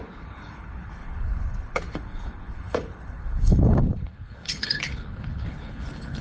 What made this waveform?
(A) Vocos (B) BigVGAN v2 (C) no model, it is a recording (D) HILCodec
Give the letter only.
D